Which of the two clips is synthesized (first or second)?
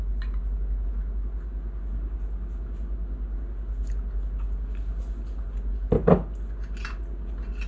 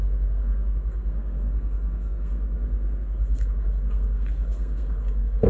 second